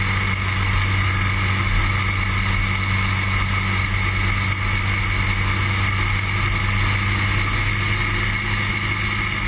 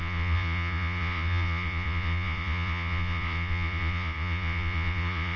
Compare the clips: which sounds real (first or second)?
first